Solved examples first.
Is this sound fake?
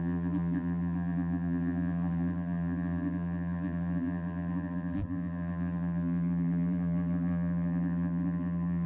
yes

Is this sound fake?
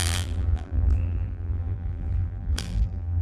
yes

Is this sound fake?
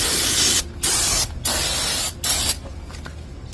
no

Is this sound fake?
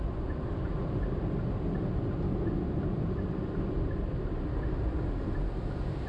no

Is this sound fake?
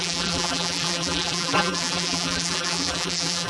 yes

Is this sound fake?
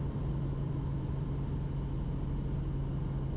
no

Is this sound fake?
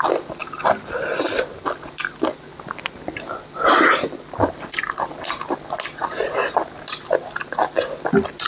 no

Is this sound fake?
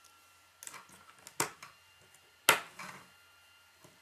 no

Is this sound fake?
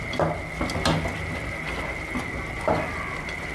no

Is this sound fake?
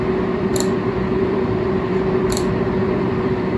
yes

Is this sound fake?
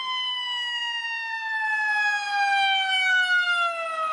no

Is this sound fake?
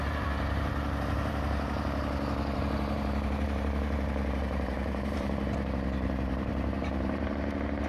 yes